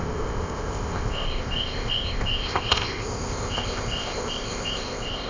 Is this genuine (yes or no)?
no